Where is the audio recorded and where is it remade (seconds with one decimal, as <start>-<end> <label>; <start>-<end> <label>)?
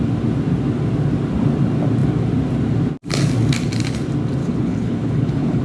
0.0-4.4 recorded; 4.4-5.6 remade